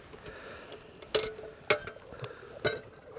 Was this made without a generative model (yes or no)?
yes